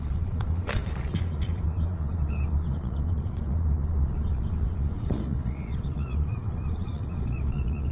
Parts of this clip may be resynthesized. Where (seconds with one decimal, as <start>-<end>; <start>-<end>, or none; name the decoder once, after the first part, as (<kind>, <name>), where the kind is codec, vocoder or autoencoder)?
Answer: 0.0-7.9 (vocoder, Vocos)